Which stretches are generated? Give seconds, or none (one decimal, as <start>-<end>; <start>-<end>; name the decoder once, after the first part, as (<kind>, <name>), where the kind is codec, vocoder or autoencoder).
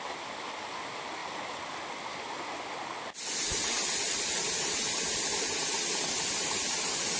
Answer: none